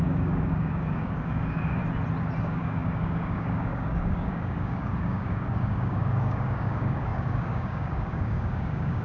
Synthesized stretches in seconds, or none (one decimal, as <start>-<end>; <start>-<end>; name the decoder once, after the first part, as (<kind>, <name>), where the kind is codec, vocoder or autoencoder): 0.0-1.8 (codec, DAC); 2.4-9.0